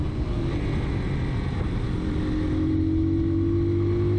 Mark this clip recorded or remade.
recorded